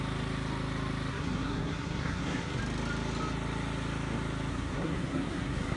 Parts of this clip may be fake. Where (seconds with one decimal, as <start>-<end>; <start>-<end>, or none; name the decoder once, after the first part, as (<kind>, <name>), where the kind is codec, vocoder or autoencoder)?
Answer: 1.1-2.6 (codec, SNAC); 4.5-5.8